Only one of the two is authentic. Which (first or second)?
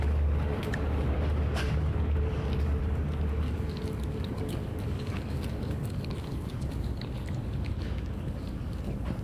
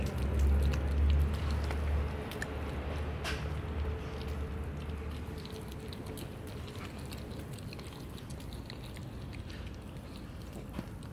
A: second